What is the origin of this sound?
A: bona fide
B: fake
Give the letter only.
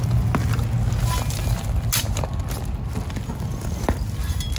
A